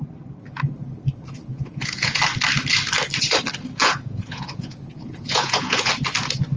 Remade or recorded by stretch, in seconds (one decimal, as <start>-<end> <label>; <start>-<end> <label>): 0.0-1.5 recorded; 1.5-2.2 remade; 2.2-3.8 recorded; 3.8-5.9 remade; 5.9-6.6 recorded